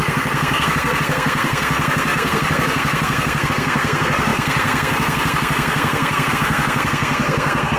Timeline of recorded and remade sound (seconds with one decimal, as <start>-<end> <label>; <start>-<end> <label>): 0.0-7.8 remade